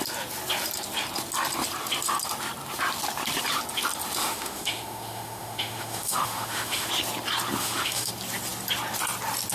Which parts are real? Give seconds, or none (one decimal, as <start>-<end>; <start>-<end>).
0.0-4.2; 6.9-7.6; 8.1-9.5